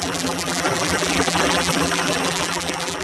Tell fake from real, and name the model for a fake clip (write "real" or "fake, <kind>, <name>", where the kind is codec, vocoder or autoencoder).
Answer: fake, vocoder, BigVGAN v2